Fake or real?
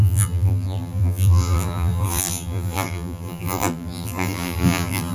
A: fake